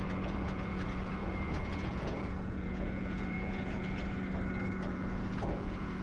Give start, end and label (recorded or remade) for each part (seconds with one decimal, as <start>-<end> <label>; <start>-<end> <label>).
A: 0.0-4.0 remade; 4.0-4.7 recorded; 4.7-6.0 remade